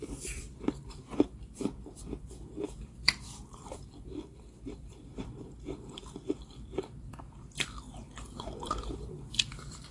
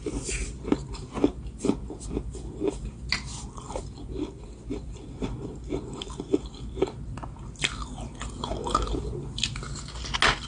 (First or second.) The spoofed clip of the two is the first